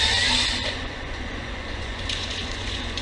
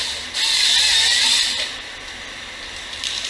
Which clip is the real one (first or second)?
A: second